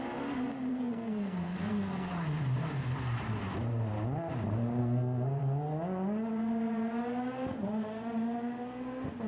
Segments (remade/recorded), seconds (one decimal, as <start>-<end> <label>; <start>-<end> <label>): 0.0-0.7 recorded; 0.7-2.1 remade; 2.1-4.8 recorded; 4.8-5.4 remade; 5.4-9.3 recorded